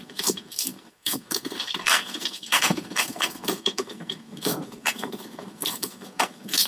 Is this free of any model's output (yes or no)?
no